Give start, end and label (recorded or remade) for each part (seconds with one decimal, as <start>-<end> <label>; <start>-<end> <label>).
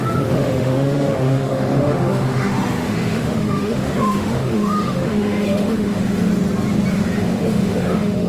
0.0-6.3 remade; 6.3-6.9 recorded; 6.9-8.3 remade